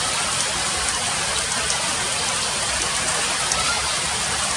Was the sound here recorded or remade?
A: recorded